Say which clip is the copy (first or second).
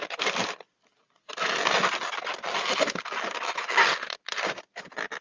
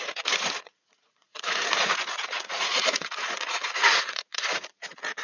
second